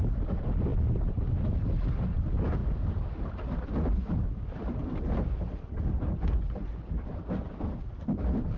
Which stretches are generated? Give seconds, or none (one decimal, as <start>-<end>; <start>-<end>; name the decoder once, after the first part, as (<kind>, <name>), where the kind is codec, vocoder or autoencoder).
6.1-7.4 (vocoder, BigVGAN v2)